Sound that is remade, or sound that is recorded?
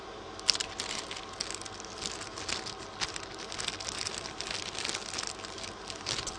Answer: recorded